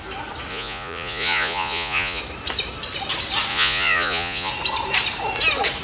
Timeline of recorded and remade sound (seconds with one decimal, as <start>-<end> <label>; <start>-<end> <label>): 0.0-0.5 recorded; 0.5-2.2 remade; 2.2-3.5 recorded; 3.5-4.5 remade; 4.5-5.8 recorded